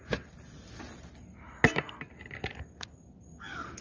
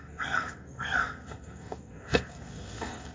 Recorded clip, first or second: first